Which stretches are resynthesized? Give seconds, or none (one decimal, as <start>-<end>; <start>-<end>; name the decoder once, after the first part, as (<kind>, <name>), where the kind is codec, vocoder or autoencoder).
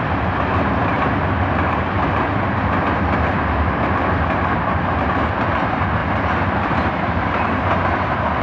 none